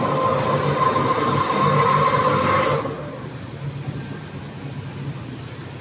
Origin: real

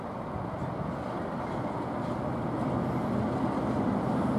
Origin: real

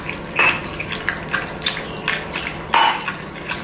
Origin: real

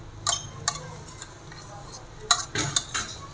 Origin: real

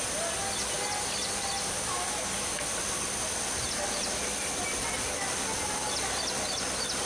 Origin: real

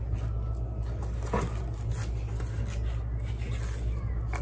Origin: real